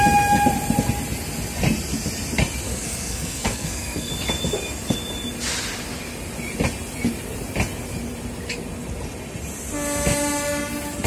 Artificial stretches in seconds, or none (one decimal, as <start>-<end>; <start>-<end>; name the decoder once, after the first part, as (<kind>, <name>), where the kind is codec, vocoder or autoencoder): 2.7-4.1 (codec, SNAC)

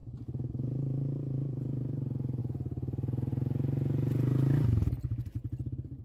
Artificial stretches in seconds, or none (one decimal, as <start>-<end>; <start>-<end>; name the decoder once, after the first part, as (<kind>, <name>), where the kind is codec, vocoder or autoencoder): 0.0-2.4 (vocoder, BigVGAN v2)

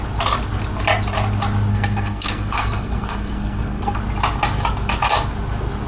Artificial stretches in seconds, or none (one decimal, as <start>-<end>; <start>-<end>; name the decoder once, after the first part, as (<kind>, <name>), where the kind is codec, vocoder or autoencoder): 1.7-4.0 (codec, SNAC)

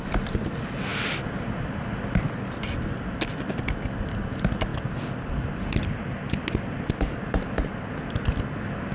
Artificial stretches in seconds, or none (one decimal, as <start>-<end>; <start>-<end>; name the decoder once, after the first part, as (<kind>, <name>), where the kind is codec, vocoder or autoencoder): none

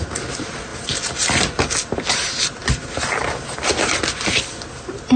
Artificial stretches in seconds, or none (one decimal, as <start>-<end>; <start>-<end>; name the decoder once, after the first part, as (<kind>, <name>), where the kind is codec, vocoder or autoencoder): none

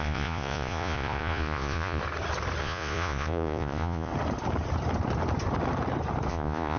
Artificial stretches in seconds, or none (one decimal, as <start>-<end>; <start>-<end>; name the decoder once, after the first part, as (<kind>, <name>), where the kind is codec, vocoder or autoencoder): 0.0-2.0 (vocoder, Vocos); 2.6-4.1; 6.3-6.8

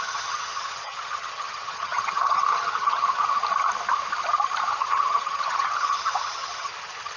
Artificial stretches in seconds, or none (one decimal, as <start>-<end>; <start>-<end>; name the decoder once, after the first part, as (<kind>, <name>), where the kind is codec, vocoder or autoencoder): 0.0-3.4 (vocoder, HiFi-GAN); 4.7-7.2

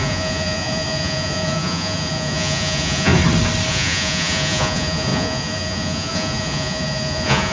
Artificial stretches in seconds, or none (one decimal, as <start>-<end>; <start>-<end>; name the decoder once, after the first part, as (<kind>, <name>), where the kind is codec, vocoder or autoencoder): 0.0-3.1 (vocoder, Vocos); 3.7-7.5